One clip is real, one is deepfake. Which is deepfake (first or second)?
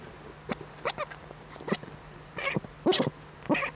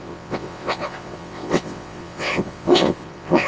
second